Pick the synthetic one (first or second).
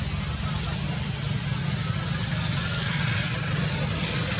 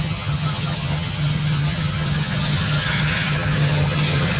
second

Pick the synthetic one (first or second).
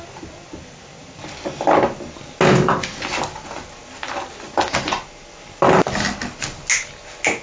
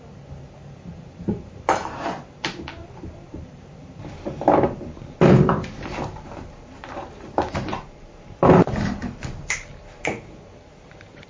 second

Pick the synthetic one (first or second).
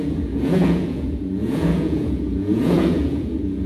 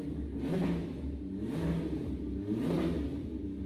first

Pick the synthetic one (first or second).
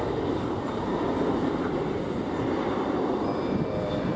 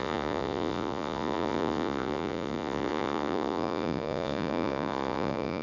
second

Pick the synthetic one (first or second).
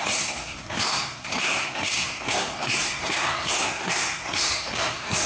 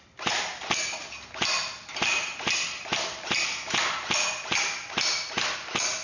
first